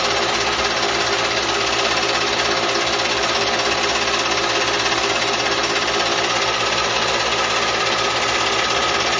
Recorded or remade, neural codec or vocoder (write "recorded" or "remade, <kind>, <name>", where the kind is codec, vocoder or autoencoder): recorded